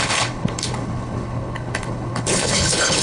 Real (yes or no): no